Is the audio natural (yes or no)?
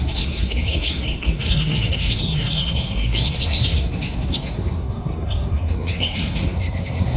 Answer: no